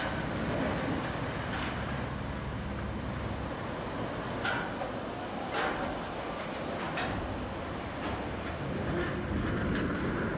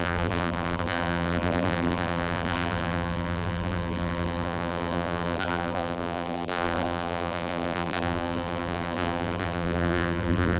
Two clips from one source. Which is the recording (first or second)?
first